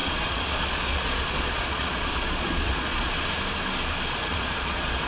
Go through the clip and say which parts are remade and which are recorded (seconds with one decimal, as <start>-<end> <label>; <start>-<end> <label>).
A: 0.0-3.1 remade; 3.1-4.2 recorded; 4.2-5.1 remade